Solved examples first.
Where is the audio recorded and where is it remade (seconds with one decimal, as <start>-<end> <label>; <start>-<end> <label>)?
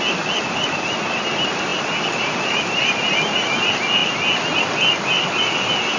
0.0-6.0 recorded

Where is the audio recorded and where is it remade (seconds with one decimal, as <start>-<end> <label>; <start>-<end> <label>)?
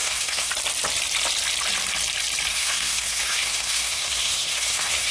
0.0-0.5 remade; 0.5-2.5 recorded; 2.5-5.1 remade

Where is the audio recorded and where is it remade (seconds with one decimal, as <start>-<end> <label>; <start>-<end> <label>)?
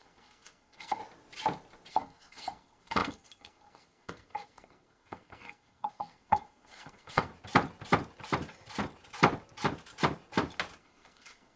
0.0-1.0 remade; 1.0-1.9 recorded; 1.9-7.3 remade; 7.3-10.8 recorded; 10.8-11.6 remade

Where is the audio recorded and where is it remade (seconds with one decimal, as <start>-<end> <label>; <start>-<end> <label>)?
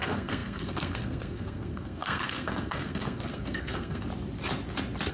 0.0-4.1 remade; 4.1-5.1 recorded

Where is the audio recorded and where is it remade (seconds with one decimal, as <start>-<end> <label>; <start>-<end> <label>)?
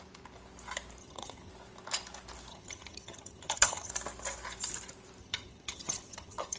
0.0-1.0 recorded; 1.0-1.5 remade; 1.5-2.5 recorded; 2.5-3.9 remade; 3.9-5.2 recorded; 5.2-6.6 remade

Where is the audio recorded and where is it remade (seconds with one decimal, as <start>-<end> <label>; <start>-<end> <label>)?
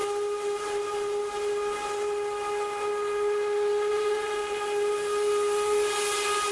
0.0-3.9 recorded; 3.9-4.4 remade; 4.4-6.5 recorded